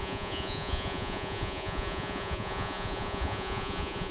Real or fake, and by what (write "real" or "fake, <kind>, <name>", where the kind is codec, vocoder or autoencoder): fake, vocoder, Vocos